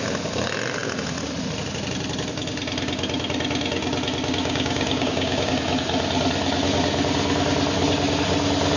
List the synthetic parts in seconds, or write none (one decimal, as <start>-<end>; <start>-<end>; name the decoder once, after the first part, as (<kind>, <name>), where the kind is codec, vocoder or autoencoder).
4.4-5.5 (codec, DAC)